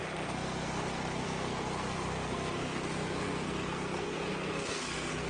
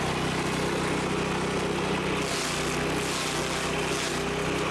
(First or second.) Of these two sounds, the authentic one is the second